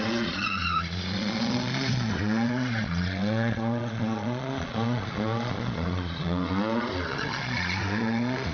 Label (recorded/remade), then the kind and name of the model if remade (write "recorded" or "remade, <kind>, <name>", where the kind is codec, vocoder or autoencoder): remade, vocoder, Vocos